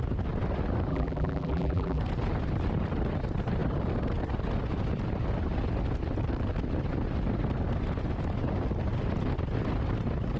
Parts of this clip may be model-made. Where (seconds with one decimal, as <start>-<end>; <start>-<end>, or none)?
0.9-2.0